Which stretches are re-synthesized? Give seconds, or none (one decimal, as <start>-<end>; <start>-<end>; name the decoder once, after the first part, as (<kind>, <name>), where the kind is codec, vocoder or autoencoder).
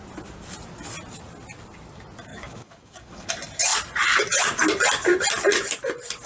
2.3-3.3 (codec, DAC)